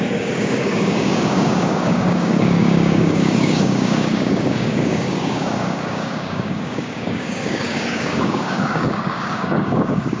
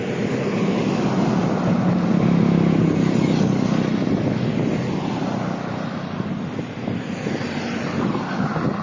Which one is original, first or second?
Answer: second